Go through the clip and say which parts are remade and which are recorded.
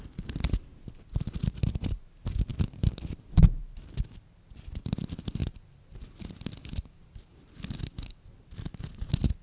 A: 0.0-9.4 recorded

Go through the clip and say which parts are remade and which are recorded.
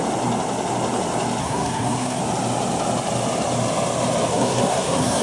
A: 0.0-1.4 recorded; 1.4-2.2 remade; 2.2-4.3 recorded; 4.3-5.2 remade